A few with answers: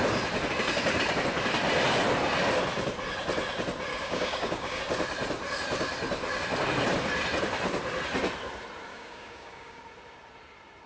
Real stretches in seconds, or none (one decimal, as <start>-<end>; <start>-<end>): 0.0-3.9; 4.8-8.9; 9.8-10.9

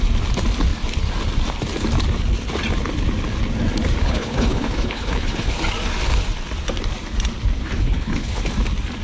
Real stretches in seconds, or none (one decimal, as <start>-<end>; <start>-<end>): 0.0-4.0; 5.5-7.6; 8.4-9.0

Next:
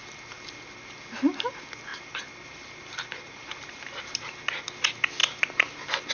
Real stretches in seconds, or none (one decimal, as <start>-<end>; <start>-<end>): 0.0-1.9; 4.3-6.1